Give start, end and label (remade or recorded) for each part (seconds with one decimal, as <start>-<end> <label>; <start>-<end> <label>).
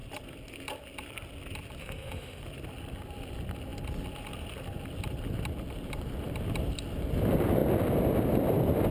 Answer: 0.0-1.8 recorded; 1.8-2.4 remade; 2.4-8.9 recorded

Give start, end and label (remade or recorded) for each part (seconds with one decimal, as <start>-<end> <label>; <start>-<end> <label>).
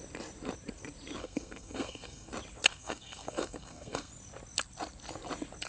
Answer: 0.0-1.2 recorded; 1.2-2.3 remade; 2.3-2.7 recorded; 2.7-4.1 remade; 4.1-5.7 recorded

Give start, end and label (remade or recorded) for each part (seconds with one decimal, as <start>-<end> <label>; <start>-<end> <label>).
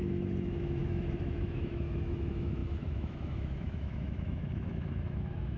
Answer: 0.0-5.6 remade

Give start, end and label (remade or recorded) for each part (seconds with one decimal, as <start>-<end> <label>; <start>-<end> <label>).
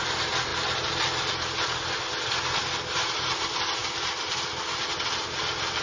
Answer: 0.0-5.8 recorded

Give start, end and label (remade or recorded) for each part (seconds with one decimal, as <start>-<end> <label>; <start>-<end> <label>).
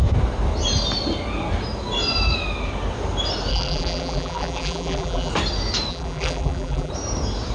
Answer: 0.0-3.5 recorded; 3.5-5.3 remade; 5.3-5.9 recorded; 5.9-6.9 remade; 6.9-7.5 recorded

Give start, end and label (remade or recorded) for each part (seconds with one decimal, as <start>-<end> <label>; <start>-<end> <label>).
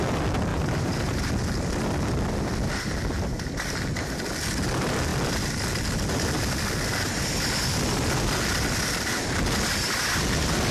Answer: 0.0-0.5 recorded; 0.5-1.3 remade; 1.3-10.7 recorded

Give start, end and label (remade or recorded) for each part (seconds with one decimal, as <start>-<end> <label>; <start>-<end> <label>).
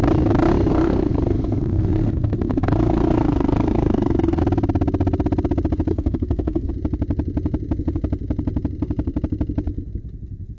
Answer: 0.0-0.7 recorded; 0.7-4.4 remade; 4.4-5.9 recorded; 5.9-6.7 remade; 6.7-10.6 recorded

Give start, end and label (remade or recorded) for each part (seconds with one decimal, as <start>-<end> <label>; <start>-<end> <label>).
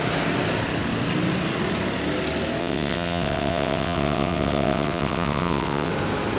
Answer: 0.0-2.6 recorded; 2.6-5.9 remade; 5.9-6.4 recorded